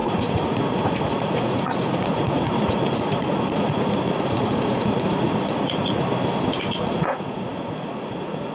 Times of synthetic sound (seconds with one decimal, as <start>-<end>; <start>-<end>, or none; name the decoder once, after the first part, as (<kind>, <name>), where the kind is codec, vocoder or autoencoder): 0.0-6.0 (vocoder, Vocos); 6.8-8.5